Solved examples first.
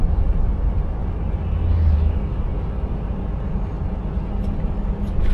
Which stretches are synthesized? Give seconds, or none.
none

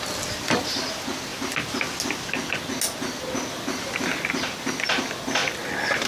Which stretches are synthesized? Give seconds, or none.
none

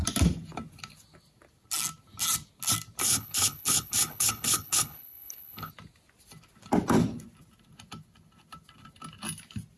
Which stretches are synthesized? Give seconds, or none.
3.0-5.7 (codec, HILCodec)